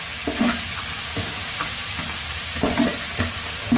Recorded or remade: recorded